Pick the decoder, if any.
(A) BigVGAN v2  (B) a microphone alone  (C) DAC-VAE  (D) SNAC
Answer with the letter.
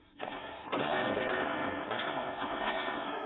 D